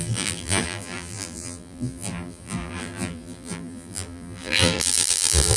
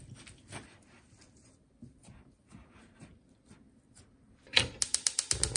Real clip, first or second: second